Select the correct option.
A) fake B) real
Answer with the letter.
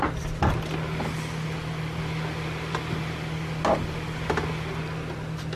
B